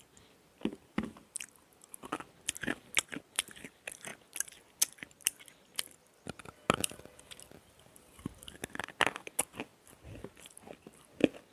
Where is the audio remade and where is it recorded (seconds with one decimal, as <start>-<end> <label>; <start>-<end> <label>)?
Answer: 0.0-11.5 recorded